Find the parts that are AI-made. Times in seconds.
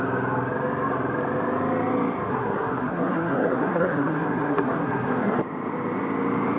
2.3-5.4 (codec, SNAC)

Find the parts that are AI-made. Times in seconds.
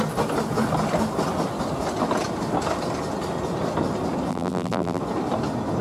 4.3-5.0 (vocoder, BigVGAN v2)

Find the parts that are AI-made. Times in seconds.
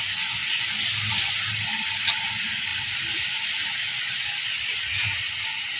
2.7-4.2 (vocoder, BigVGAN v2)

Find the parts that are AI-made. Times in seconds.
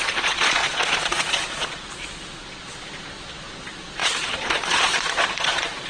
0.0-5.9 (vocoder, Vocos)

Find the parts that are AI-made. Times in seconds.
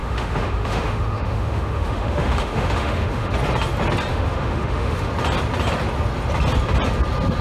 0.0-3.3 (autoencoder, DAC-VAE); 4.1-5.1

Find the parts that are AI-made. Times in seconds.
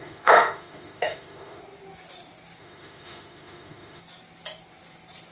0.0-1.6 (autoencoder, DAC-VAE); 2.6-4.0